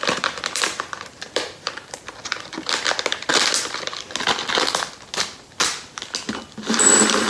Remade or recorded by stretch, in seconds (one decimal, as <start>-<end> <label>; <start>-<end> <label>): 0.0-3.3 remade; 3.3-6.6 recorded; 6.6-7.3 remade